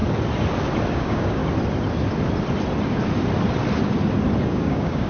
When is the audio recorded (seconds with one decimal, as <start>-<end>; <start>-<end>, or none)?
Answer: 0.0-0.9; 1.4-4.5